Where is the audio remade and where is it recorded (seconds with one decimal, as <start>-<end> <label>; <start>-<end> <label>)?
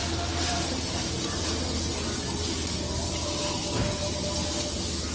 0.0-5.1 recorded